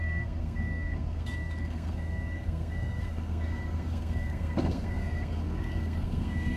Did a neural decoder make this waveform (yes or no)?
yes